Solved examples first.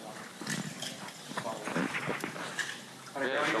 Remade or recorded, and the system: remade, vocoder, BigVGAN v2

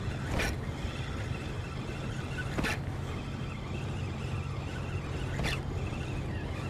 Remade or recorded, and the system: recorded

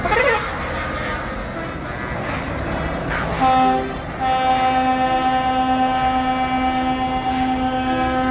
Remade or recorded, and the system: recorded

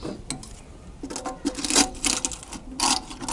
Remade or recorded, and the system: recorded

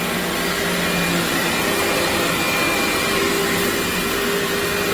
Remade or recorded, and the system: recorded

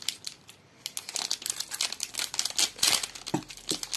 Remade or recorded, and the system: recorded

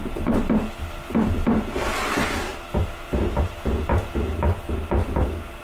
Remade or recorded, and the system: recorded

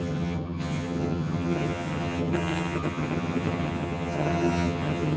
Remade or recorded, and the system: remade, vocoder, HiFi-GAN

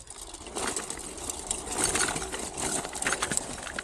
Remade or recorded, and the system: recorded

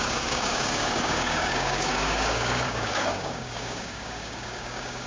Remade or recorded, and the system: remade, codec, DAC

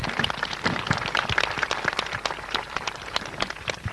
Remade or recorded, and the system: remade, vocoder, BigVGAN v2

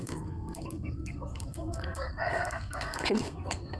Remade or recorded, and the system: remade, codec, SNAC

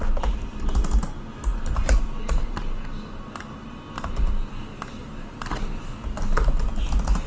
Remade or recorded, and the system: recorded